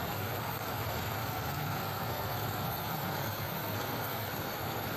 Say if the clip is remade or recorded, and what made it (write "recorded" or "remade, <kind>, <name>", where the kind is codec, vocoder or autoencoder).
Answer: remade, codec, SNAC